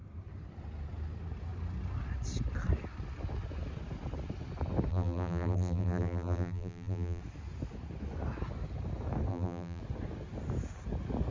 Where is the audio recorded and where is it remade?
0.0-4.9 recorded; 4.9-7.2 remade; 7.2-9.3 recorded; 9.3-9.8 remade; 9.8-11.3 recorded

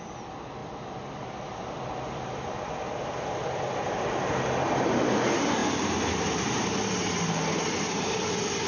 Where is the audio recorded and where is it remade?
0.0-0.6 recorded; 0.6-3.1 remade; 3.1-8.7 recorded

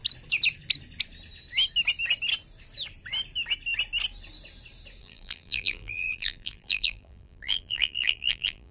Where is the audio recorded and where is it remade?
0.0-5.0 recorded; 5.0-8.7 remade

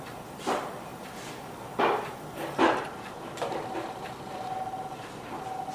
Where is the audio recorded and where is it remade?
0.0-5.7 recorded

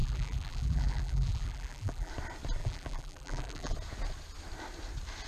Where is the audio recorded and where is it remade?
0.0-2.1 remade; 2.1-2.6 recorded; 2.6-3.7 remade; 3.7-5.3 recorded

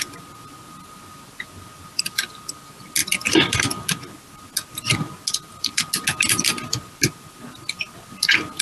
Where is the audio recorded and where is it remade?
0.0-8.6 recorded